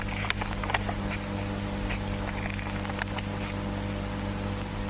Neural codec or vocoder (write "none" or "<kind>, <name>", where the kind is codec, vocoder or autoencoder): none